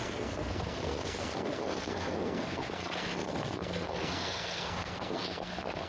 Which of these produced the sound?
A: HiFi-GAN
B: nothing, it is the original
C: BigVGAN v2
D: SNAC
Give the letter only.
D